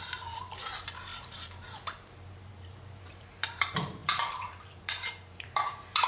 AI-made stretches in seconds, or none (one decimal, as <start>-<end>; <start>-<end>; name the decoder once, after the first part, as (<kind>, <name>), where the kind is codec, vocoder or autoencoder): 0.0-6.1 (vocoder, BigVGAN v2)